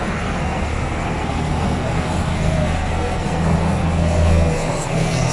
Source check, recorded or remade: remade